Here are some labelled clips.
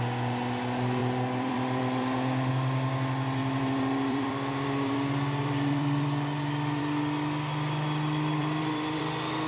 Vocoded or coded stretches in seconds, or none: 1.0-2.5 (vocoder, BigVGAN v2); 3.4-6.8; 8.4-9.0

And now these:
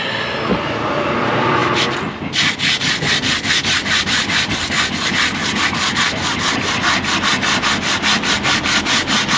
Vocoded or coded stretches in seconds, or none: none

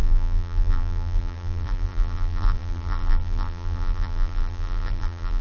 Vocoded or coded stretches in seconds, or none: 0.0-5.4 (vocoder, BigVGAN v2)

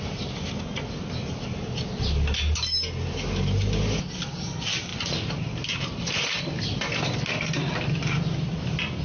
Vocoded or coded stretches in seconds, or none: none

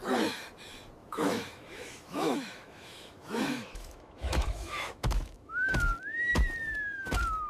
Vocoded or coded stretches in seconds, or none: 1.0-5.5 (autoencoder, DAC-VAE)